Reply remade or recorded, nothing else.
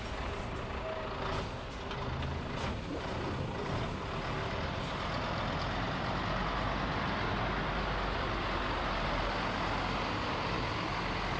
recorded